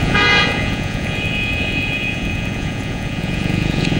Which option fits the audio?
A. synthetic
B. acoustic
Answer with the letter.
A